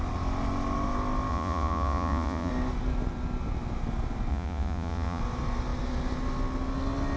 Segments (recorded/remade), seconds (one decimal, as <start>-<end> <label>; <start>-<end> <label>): 0.0-1.3 recorded; 1.3-2.5 remade; 2.5-4.3 recorded; 4.3-5.2 remade; 5.2-7.2 recorded